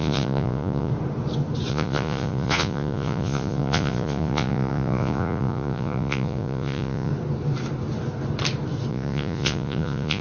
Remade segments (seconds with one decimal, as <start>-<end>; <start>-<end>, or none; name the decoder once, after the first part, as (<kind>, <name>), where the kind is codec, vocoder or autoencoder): 0.0-0.9 (vocoder, Vocos); 1.7-7.1; 8.9-10.2